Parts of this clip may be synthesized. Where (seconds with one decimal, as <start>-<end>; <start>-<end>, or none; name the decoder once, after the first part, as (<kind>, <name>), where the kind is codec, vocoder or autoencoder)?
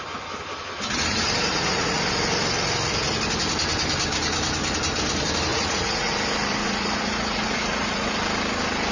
1.5-2.0 (vocoder, Vocos); 5.5-6.1; 6.6-8.2